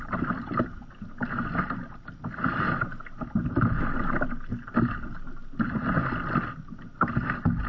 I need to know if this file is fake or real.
real